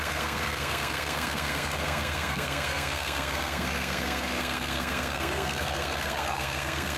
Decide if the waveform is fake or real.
fake